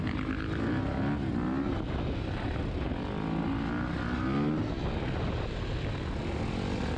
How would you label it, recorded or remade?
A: recorded